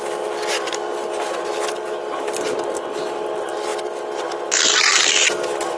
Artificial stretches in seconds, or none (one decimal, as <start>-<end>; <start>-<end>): none